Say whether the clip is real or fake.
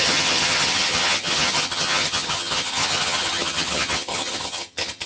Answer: fake